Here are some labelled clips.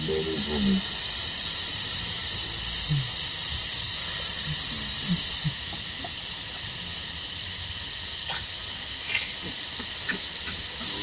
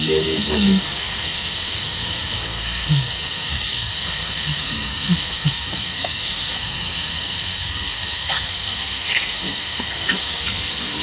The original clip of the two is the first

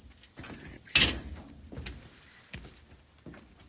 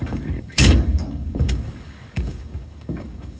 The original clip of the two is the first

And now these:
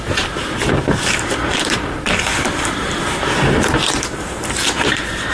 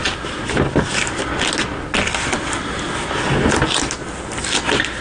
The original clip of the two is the second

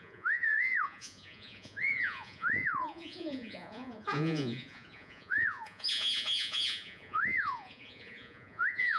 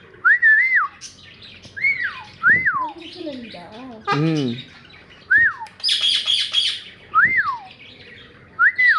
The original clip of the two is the second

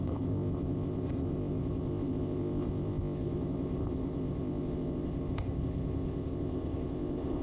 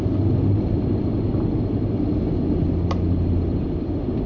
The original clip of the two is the second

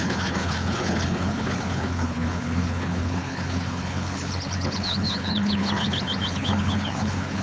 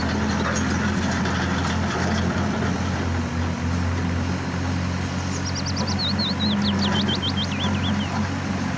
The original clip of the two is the second